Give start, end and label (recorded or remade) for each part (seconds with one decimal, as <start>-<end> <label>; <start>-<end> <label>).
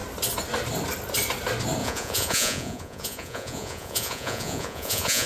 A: 0.0-1.8 recorded; 1.8-5.3 remade